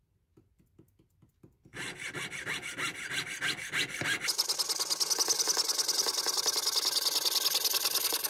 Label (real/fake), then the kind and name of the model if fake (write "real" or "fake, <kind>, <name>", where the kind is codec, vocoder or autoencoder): real